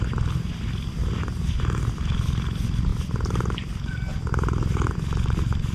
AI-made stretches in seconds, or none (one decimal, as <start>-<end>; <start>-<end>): none